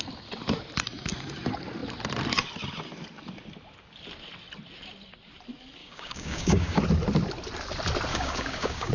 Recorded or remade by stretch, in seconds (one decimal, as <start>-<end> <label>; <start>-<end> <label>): 0.0-5.8 recorded; 5.8-6.8 remade; 6.8-8.1 recorded; 8.1-8.9 remade

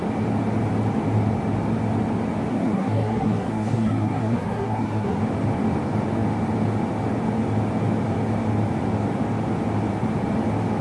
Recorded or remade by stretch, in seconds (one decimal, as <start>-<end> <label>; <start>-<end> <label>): 0.0-2.5 recorded; 2.5-5.2 remade; 5.2-10.8 recorded

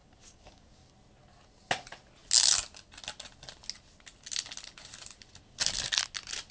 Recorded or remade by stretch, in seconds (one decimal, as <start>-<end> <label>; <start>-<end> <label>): 0.0-0.9 remade; 0.9-6.5 recorded